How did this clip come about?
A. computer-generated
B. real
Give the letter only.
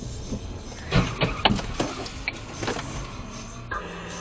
B